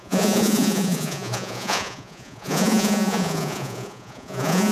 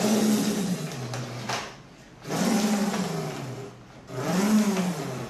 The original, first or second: second